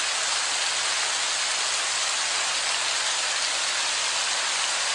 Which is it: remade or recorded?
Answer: recorded